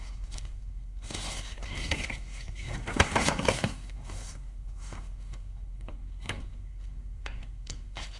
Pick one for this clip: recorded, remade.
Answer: remade